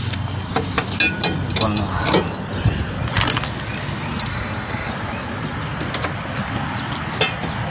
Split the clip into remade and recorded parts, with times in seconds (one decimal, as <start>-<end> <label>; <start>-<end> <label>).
0.0-4.3 recorded; 4.3-4.9 remade; 4.9-7.7 recorded